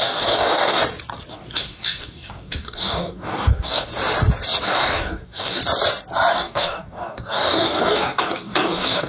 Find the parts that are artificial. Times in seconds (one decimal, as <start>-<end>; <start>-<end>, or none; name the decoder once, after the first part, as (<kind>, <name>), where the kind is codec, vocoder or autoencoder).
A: 0.0-0.8 (codec, DAC); 1.3-3.9; 4.6-5.6; 6.3-9.1